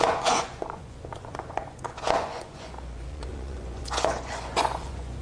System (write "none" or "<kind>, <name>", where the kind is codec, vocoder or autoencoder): vocoder, Vocos